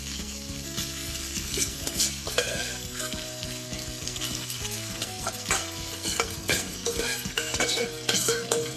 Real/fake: fake